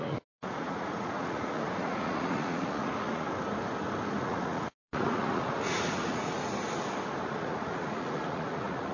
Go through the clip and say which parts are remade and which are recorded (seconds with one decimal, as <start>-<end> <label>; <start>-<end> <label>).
0.0-3.3 remade; 3.3-4.2 recorded; 4.2-6.4 remade; 6.4-7.3 recorded; 7.3-8.9 remade